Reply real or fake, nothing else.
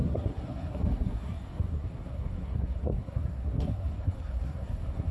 fake